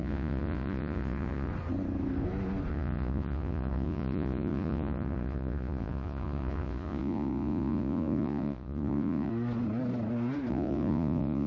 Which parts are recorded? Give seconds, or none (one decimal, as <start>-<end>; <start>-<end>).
1.5-2.7; 9.3-10.5